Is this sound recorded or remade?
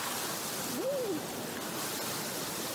recorded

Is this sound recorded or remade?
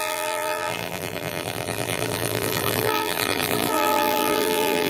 remade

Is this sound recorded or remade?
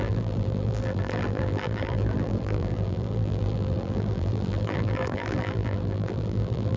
remade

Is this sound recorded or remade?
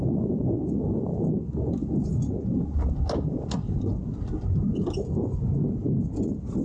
recorded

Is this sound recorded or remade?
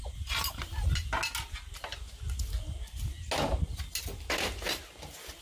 recorded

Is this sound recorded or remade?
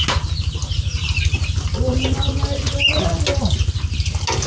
recorded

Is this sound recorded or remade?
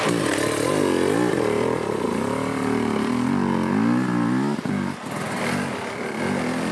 recorded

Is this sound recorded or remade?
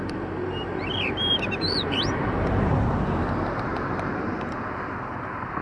remade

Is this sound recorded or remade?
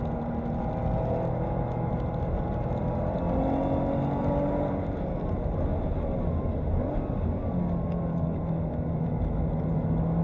recorded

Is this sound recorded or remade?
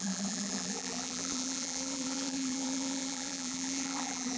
remade